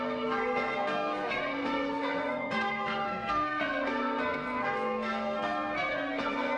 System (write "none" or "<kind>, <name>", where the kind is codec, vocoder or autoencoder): codec, SNAC